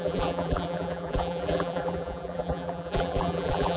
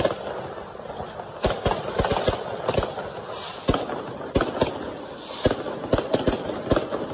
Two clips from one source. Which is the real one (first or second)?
second